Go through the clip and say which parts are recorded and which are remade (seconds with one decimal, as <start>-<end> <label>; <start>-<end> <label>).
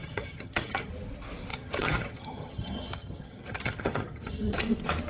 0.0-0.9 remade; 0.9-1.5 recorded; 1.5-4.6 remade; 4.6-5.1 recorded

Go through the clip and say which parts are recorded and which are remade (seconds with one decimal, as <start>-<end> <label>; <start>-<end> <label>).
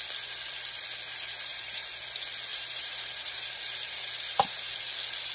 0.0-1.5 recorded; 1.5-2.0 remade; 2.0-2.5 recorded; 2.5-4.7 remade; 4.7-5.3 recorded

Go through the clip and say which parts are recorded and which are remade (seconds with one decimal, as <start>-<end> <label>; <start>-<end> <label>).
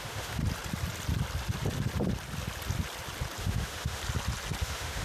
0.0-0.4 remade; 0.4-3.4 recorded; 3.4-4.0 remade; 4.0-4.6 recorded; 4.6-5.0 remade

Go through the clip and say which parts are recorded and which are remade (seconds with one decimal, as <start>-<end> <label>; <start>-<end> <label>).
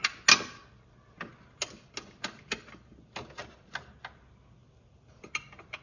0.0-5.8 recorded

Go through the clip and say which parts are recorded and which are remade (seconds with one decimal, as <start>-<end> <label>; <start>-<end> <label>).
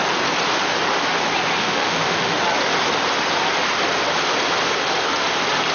0.0-1.6 recorded; 1.6-2.4 remade; 2.4-5.7 recorded